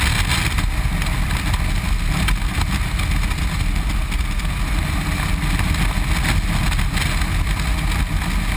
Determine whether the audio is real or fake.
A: real